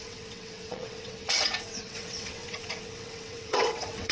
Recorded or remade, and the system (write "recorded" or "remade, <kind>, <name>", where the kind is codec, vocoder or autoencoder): remade, vocoder, WaveNeXt